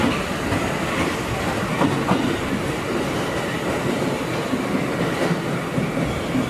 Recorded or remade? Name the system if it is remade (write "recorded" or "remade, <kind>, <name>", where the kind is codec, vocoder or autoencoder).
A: recorded